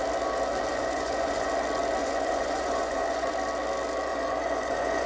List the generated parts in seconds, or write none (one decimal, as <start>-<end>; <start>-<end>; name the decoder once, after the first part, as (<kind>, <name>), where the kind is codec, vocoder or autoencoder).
0.7-1.5 (vocoder, Vocos); 2.0-3.3; 4.1-5.1